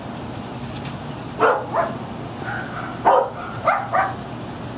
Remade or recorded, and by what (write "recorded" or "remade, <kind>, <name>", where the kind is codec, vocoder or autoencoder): recorded